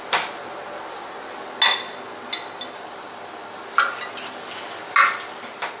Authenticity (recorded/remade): recorded